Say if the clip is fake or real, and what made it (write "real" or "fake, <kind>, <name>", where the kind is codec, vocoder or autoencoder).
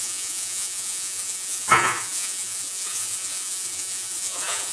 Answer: fake, vocoder, Vocos